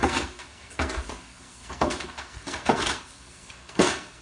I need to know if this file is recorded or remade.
remade